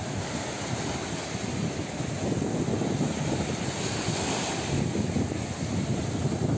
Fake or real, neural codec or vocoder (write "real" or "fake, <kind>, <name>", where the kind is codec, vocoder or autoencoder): real